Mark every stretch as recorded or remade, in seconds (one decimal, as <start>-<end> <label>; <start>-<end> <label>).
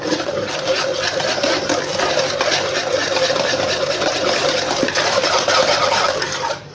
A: 0.0-0.9 remade; 0.9-4.9 recorded; 4.9-6.7 remade